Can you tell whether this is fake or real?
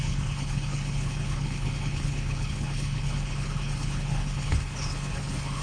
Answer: fake